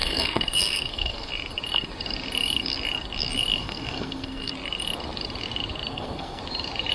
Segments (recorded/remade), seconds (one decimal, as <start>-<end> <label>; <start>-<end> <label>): 0.0-1.3 remade; 1.3-3.6 recorded; 3.6-4.5 remade; 4.5-5.9 recorded; 5.9-6.4 remade; 6.4-6.9 recorded